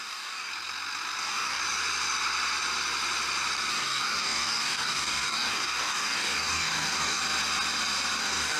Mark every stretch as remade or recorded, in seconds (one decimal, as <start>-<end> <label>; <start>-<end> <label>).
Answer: 0.0-0.5 remade; 0.5-1.2 recorded; 1.2-1.6 remade; 1.6-3.7 recorded; 3.7-7.2 remade; 7.2-8.2 recorded; 8.2-8.6 remade